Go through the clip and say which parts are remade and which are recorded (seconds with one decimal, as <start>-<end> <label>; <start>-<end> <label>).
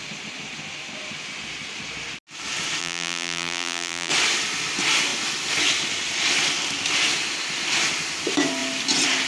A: 0.0-2.8 recorded; 2.8-4.1 remade; 4.1-9.3 recorded